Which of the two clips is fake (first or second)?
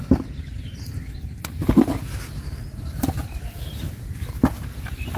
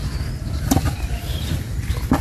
first